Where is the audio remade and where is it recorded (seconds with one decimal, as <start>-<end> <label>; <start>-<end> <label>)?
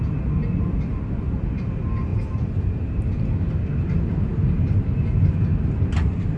0.0-6.4 recorded